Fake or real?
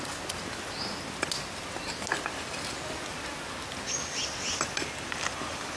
real